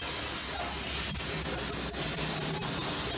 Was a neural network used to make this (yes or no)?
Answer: no